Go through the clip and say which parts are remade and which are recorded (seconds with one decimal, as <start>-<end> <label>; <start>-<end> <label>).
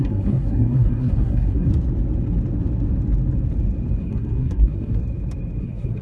0.0-1.7 remade; 1.7-4.0 recorded; 4.0-5.0 remade; 5.0-5.6 recorded; 5.6-6.0 remade